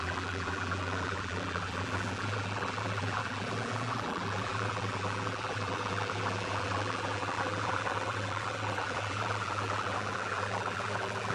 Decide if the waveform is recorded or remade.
remade